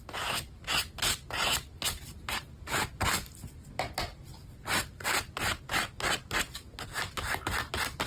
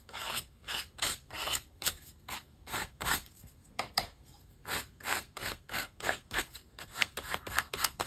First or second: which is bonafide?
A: first